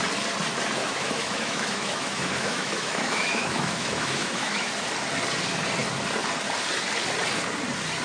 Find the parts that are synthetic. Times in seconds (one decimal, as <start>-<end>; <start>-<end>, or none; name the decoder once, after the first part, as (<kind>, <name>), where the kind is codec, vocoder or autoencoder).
0.8-4.7 (autoencoder, DAC-VAE)